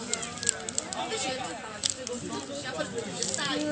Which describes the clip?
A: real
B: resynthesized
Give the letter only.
A